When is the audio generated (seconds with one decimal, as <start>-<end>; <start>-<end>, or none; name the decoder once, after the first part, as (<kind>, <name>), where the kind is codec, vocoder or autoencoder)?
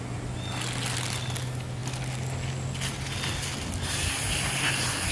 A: none